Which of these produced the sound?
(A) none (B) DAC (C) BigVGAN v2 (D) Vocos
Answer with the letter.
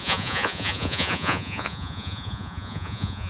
D